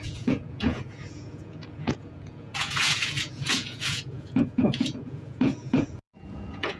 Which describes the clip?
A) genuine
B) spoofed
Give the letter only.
B